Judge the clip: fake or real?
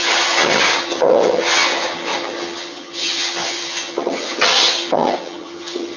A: fake